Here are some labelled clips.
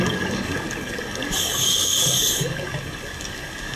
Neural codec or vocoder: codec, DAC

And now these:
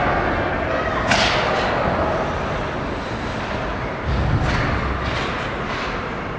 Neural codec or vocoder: none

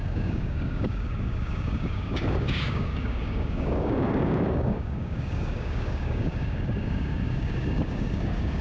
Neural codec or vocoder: codec, DAC